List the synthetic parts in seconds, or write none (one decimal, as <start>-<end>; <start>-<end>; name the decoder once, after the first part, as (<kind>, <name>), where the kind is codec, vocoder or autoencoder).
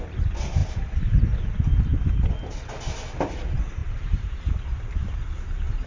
0.0-0.6 (vocoder, BigVGAN v2); 3.3-5.9